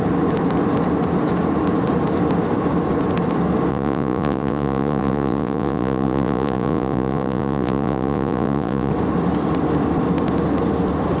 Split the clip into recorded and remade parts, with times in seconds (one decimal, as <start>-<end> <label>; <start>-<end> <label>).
0.0-3.7 recorded; 3.7-8.9 remade; 8.9-11.2 recorded